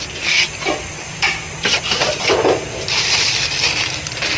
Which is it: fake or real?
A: real